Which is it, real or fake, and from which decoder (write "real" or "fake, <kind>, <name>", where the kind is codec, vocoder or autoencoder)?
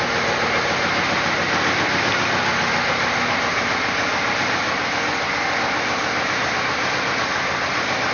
real